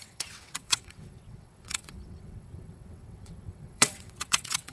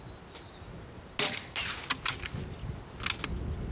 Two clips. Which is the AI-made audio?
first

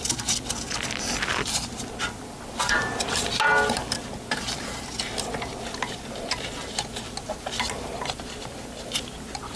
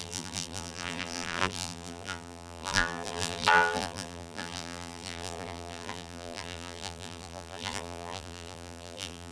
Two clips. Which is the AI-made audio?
second